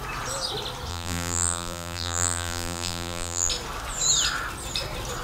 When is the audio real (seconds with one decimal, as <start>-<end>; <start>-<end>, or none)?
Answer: 0.0-0.9; 3.5-5.2